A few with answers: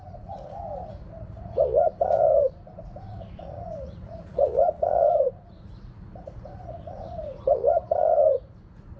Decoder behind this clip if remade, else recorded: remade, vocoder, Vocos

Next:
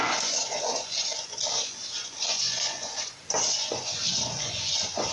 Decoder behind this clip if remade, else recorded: remade, vocoder, Vocos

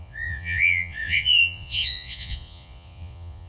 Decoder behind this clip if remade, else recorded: remade, vocoder, Vocos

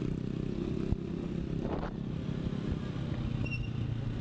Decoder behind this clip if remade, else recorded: recorded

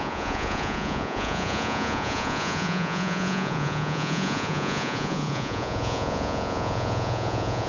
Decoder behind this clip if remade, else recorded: remade, vocoder, Vocos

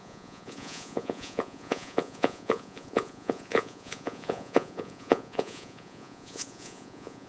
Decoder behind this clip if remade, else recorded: remade, vocoder, Vocos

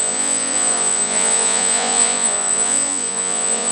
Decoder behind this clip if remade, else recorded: remade, vocoder, Vocos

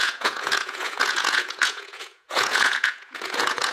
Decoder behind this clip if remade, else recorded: remade, vocoder, Vocos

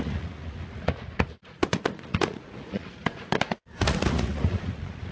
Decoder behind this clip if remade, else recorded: remade, vocoder, Vocos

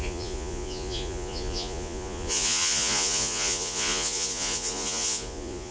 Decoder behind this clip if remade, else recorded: remade, vocoder, Vocos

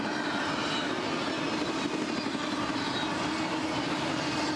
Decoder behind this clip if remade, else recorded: recorded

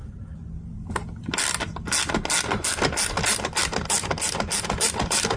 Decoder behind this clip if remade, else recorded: recorded